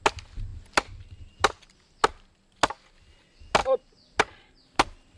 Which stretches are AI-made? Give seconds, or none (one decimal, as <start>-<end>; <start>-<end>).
none